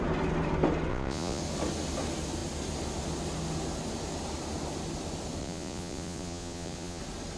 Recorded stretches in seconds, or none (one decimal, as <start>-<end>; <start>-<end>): 0.0-0.9; 1.4-5.4; 7.0-7.4

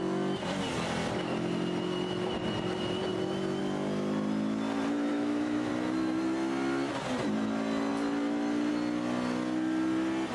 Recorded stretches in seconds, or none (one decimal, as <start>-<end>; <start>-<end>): 0.0-5.1; 5.7-10.3

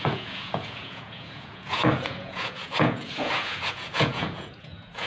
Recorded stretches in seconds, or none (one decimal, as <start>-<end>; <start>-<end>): none

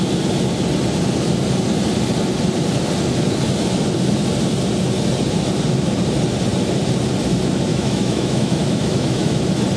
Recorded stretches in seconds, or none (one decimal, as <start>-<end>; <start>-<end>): 0.0-7.7; 9.4-9.8

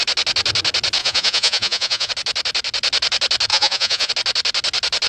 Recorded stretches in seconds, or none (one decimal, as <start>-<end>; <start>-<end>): 0.0-1.0; 2.1-3.5; 4.1-5.1

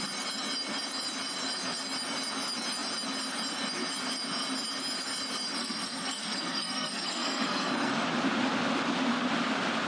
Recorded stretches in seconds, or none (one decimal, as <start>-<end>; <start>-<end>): 0.0-5.6; 7.9-9.9